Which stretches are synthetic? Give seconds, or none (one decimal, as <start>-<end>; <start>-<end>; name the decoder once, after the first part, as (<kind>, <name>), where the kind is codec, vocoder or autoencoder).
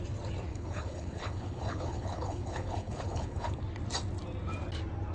0.5-3.6 (codec, HILCodec)